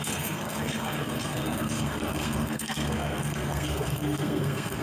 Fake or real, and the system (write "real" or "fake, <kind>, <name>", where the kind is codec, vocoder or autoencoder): fake, codec, SNAC